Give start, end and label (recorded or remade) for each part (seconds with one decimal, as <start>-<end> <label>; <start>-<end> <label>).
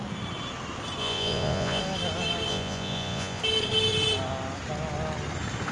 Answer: 0.0-1.0 recorded; 1.0-1.8 remade; 1.8-2.5 recorded; 2.5-3.4 remade; 3.4-5.7 recorded